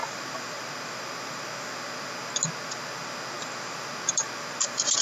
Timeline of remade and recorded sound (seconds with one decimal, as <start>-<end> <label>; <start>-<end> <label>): 0.0-5.0 recorded